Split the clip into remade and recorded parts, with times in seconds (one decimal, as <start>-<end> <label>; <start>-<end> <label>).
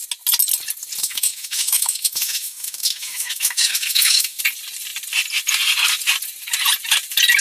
0.0-1.0 recorded; 1.0-4.4 remade; 4.4-7.4 recorded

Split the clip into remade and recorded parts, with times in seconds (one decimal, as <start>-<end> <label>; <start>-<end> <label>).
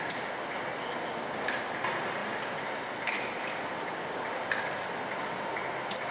0.0-6.1 recorded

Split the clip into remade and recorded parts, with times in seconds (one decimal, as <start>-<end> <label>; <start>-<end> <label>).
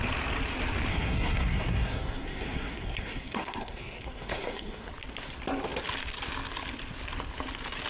0.0-0.9 recorded; 0.9-4.9 remade; 4.9-7.9 recorded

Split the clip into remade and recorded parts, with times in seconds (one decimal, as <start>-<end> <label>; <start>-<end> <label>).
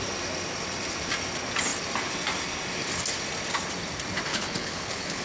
0.0-4.3 recorded; 4.3-5.2 remade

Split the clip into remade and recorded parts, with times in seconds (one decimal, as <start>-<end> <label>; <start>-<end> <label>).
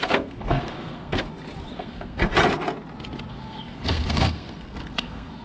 0.0-1.3 remade; 1.3-1.8 recorded; 1.8-2.3 remade; 2.3-3.3 recorded; 3.3-5.4 remade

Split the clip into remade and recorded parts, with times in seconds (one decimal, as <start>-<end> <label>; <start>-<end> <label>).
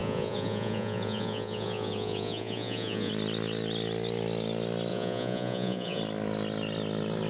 0.0-3.1 remade; 3.1-4.9 recorded; 4.9-6.0 remade; 6.0-7.3 recorded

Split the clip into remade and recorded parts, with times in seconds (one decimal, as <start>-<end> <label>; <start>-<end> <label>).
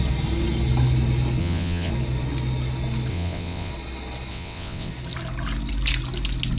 0.0-1.4 recorded; 1.4-1.9 remade; 1.9-3.1 recorded; 3.1-3.7 remade; 3.7-4.3 recorded; 4.3-4.9 remade; 4.9-6.6 recorded